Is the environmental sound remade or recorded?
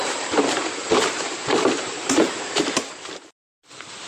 remade